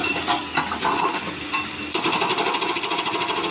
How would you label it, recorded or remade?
remade